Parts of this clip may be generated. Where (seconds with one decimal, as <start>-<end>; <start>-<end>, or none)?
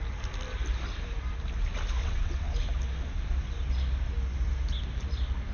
2.0-2.5